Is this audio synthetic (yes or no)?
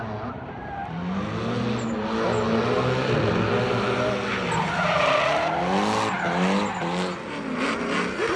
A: no